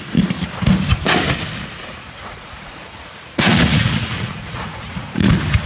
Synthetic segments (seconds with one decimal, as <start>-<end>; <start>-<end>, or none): 1.9-5.3